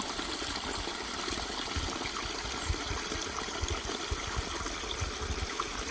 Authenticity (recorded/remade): recorded